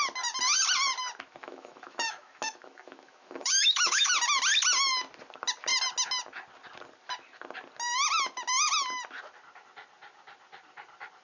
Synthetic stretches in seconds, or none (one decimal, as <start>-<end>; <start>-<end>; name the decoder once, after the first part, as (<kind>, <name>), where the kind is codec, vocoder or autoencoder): 1.4-4.1 (autoencoder, DAC-VAE)

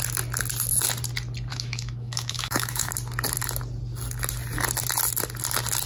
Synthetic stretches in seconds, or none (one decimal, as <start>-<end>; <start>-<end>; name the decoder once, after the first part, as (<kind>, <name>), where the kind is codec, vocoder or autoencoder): 1.5-2.9 (autoencoder, DAC-VAE)

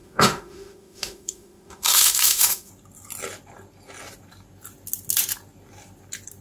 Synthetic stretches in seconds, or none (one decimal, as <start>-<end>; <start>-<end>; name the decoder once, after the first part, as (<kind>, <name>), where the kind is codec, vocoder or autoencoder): 0.0-2.7 (autoencoder, DAC-VAE)

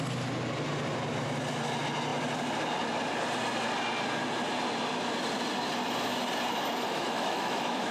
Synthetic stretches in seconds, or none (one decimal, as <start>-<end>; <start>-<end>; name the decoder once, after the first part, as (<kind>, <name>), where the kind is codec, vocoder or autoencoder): 6.9-7.9 (autoencoder, DAC-VAE)

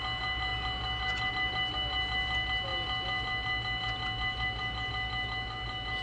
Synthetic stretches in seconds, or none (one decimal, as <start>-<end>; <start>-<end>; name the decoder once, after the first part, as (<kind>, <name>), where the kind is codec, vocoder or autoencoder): none

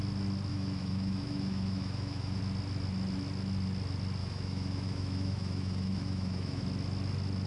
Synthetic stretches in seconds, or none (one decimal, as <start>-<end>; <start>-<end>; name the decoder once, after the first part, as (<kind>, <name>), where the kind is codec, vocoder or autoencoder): 0.5-2.4 (autoencoder, DAC-VAE); 4.2-6.6

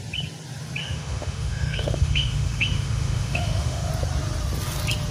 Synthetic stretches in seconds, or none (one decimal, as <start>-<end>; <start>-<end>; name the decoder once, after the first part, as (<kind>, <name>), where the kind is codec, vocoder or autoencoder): 0.8-3.9 (autoencoder, DAC-VAE)